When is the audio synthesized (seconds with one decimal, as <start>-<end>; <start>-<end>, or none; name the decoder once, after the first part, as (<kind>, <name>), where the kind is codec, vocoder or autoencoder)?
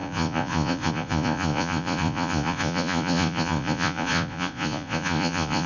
0.0-5.7 (vocoder, Vocos)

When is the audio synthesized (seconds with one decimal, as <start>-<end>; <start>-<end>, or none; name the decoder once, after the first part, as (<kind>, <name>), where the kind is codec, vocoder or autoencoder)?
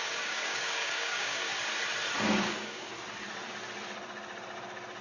0.0-1.5 (codec, DAC); 2.2-2.9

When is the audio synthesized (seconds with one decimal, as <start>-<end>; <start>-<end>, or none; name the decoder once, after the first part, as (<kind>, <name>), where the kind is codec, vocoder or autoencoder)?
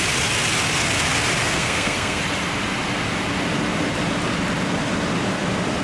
1.4-2.2 (codec, SNAC)